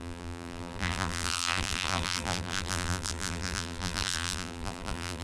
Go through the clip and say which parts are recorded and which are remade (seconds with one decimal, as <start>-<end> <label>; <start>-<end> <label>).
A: 0.0-5.2 remade